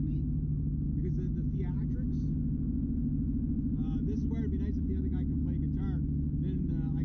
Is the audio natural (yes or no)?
yes